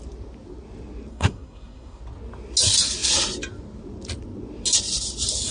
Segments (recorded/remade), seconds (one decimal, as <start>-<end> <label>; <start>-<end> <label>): 0.0-1.1 recorded; 1.1-2.0 remade; 2.0-5.5 recorded